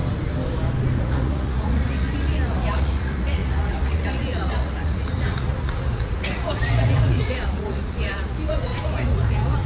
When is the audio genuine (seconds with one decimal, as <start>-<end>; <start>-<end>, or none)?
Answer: 0.0-1.0